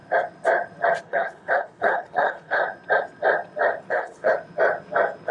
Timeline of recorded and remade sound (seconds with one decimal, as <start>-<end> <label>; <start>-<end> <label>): 0.0-1.0 recorded; 1.0-2.6 remade; 2.6-3.9 recorded; 3.9-4.3 remade; 4.3-5.3 recorded